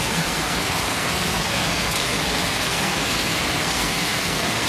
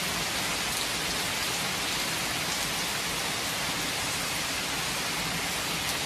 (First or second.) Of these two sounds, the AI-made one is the first